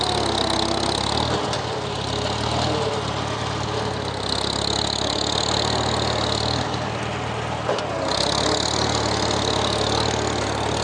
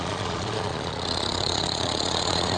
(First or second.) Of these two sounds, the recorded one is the first